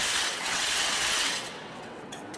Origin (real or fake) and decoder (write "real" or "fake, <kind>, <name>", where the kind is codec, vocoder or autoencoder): fake, vocoder, WaveNeXt